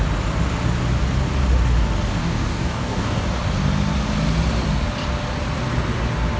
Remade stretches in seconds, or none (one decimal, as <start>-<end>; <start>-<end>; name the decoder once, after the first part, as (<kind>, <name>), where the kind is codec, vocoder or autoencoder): 2.2-3.2 (codec, DAC)